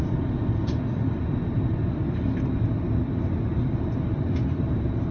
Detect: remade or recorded recorded